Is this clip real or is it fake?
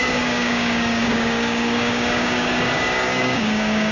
fake